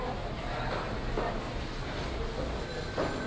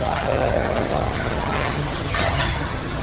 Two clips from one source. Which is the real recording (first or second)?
first